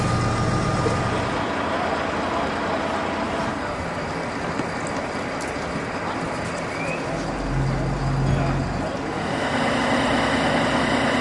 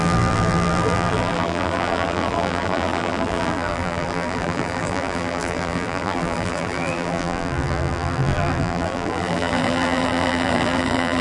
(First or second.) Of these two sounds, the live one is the first